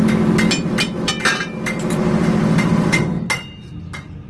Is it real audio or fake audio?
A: real